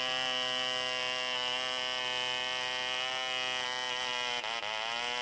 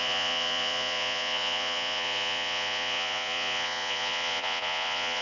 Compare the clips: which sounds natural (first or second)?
first